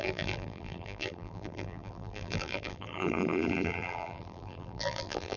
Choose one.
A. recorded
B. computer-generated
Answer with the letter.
B